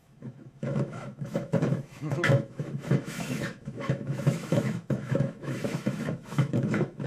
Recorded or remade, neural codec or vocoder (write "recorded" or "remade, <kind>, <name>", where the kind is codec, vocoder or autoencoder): remade, autoencoder, DAC-VAE